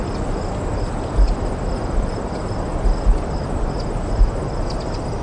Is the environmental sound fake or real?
real